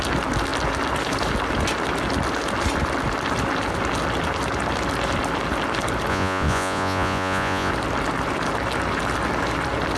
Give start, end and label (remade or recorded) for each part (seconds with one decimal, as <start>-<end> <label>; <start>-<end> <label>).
0.0-6.1 recorded; 6.1-7.7 remade; 7.7-10.0 recorded